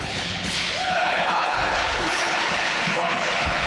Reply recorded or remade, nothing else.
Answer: remade